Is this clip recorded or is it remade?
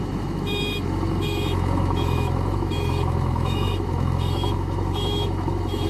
remade